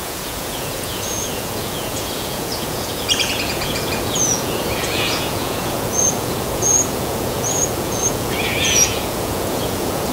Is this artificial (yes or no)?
yes